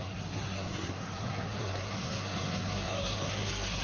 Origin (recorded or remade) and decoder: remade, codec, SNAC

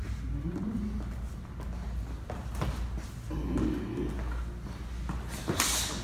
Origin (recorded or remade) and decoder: recorded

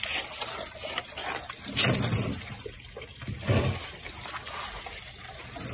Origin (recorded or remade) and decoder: recorded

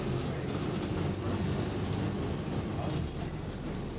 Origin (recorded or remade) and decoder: recorded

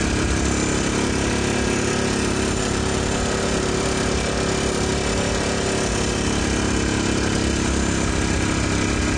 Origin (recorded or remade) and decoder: recorded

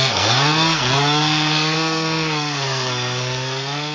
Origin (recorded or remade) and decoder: remade, codec, SNAC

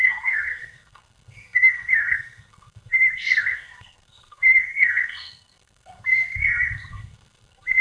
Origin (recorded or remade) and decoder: remade, codec, SNAC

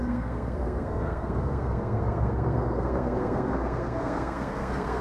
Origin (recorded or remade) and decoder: remade, codec, SNAC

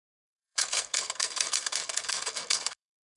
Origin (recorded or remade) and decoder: remade, codec, SNAC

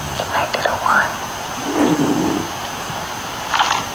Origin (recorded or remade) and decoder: recorded